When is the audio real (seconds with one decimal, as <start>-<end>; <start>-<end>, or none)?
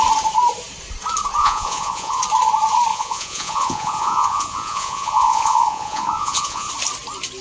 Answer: 0.0-1.4; 2.2-2.9; 6.7-7.4